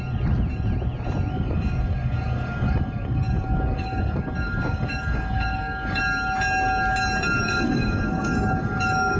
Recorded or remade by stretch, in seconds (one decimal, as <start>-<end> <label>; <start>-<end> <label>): 0.0-1.3 recorded; 1.3-6.0 remade; 6.0-7.4 recorded; 7.4-9.2 remade